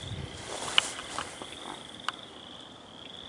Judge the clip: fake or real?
real